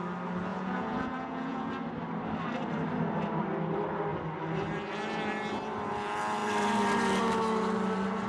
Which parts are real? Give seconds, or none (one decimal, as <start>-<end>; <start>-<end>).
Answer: 0.0-0.5; 1.7-8.3